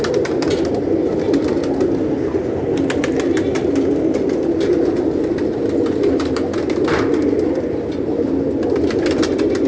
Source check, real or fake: real